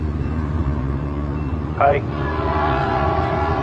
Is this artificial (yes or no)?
yes